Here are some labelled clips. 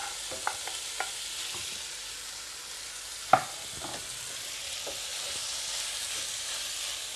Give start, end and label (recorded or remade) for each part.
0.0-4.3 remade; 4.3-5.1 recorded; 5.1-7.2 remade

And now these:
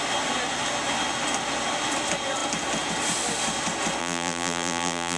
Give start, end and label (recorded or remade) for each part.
0.0-4.0 recorded; 4.0-5.2 remade

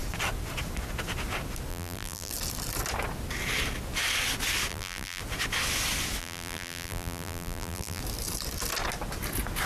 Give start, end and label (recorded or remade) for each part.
0.0-1.7 recorded; 1.7-2.3 remade; 2.3-4.7 recorded; 4.7-5.2 remade; 5.2-6.2 recorded; 6.2-8.0 remade; 8.0-9.7 recorded